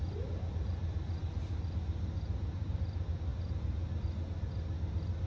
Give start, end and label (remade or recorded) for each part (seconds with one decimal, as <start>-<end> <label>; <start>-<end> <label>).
0.0-5.3 recorded